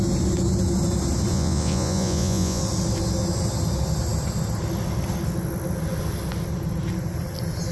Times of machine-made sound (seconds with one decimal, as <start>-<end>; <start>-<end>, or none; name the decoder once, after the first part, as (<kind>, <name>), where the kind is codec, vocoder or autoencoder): 1.3-2.6 (vocoder, Vocos)